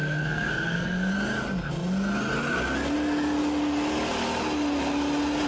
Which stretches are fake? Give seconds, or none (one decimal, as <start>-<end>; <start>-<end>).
0.0-1.1

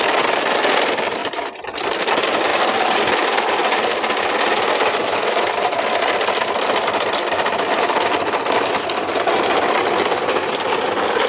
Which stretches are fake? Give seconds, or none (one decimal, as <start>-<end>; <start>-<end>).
1.2-2.1; 2.5-3.1

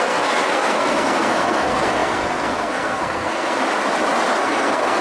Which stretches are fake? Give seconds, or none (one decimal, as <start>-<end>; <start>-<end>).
0.0-3.6; 4.3-5.0

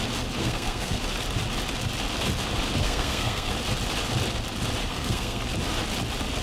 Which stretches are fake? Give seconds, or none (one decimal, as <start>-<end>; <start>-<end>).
0.4-1.0; 2.8-3.5; 4.9-5.4

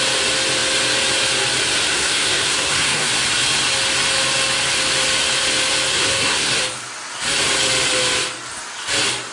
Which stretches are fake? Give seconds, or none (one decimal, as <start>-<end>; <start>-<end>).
1.9-3.1; 5.9-6.6

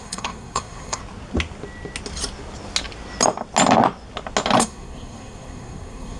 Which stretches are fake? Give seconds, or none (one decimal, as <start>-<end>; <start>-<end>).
0.0-1.0; 4.6-6.2

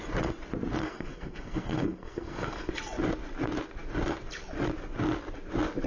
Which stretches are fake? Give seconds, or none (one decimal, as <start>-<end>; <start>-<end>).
0.8-2.7